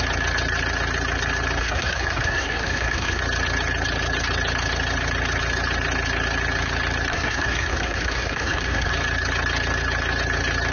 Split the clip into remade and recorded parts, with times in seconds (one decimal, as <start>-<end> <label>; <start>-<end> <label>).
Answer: 0.0-1.6 recorded; 1.6-3.2 remade; 3.2-7.1 recorded; 7.1-8.9 remade; 8.9-10.7 recorded